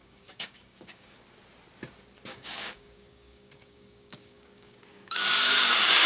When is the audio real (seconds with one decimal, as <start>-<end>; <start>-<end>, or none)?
1.2-2.3